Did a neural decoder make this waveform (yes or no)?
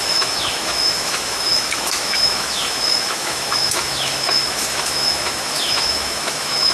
yes